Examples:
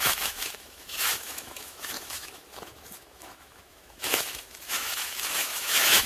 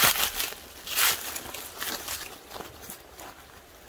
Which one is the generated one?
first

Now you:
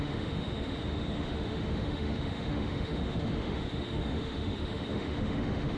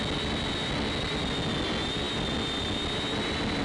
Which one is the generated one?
first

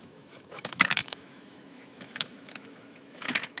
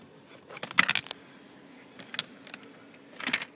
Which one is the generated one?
first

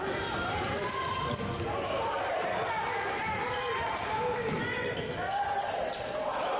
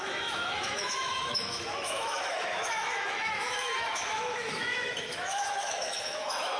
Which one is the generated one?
second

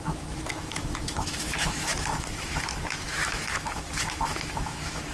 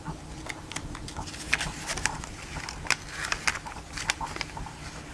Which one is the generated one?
first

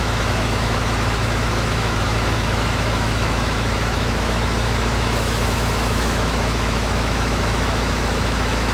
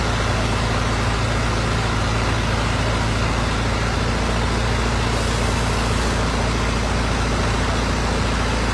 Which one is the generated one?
first